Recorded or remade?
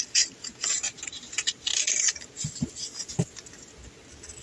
recorded